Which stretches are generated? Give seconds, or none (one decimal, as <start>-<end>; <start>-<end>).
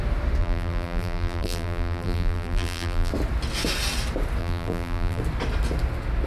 0.4-3.1; 4.4-5.2